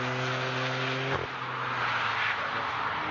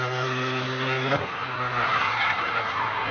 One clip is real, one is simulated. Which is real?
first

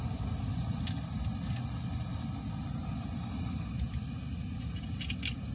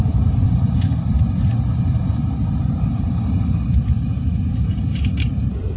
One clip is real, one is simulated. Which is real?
first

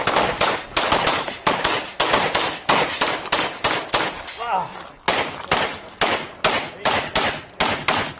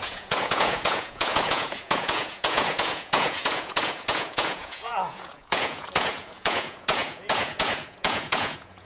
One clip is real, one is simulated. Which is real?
first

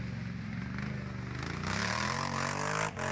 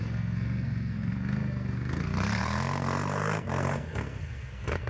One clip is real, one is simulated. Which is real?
first